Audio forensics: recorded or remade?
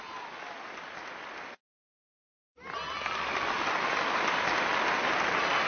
recorded